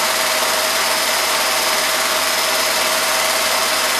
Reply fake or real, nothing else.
real